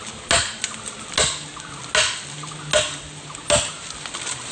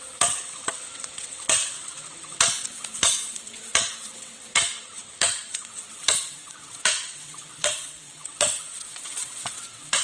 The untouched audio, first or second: first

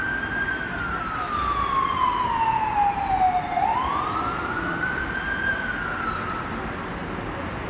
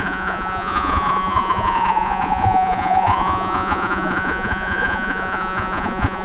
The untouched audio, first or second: first